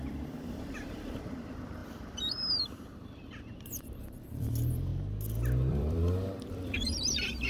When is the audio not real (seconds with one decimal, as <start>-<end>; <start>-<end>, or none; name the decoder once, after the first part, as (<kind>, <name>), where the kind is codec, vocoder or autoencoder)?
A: 0.0-4.9 (vocoder, BigVGAN v2); 5.7-7.5